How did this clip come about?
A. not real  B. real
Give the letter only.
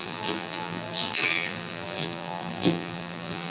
A